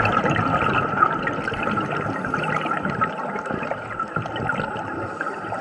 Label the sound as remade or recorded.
recorded